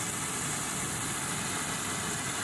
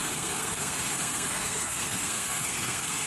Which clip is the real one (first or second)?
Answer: first